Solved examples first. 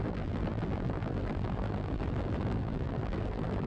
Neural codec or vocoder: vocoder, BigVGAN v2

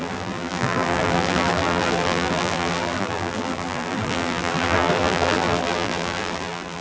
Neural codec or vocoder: vocoder, BigVGAN v2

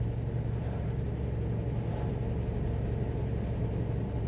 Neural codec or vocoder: none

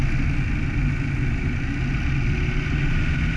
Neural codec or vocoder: none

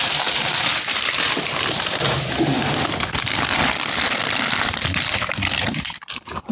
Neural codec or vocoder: vocoder, BigVGAN v2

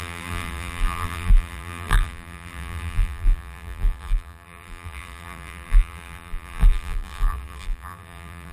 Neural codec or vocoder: vocoder, BigVGAN v2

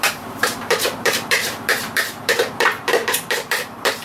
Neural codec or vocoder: vocoder, BigVGAN v2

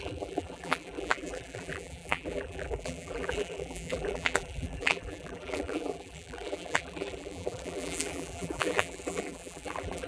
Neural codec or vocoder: vocoder, BigVGAN v2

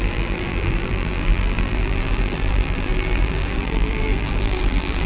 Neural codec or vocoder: vocoder, BigVGAN v2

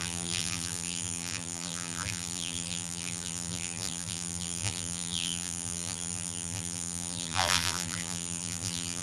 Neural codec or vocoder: vocoder, BigVGAN v2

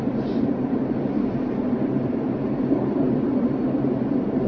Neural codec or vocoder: vocoder, BigVGAN v2